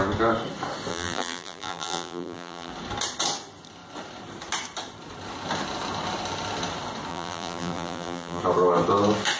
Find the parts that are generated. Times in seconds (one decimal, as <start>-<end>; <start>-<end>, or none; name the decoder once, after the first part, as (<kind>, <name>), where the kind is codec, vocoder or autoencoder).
0.9-2.7 (vocoder, BigVGAN v2); 7.1-8.4